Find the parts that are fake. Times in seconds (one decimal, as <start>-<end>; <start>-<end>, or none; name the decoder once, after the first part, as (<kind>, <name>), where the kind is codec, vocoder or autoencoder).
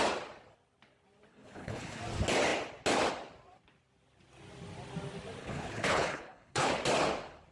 1.3-2.0 (codec, HILCodec); 5.4-6.7